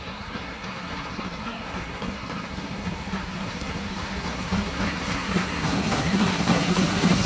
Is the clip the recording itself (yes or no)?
no